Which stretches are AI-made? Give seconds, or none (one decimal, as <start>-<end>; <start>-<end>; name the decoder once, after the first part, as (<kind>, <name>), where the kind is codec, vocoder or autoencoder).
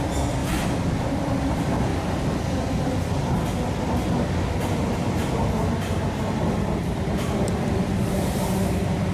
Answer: 0.0-0.4 (vocoder, BigVGAN v2); 1.1-1.9; 6.8-9.1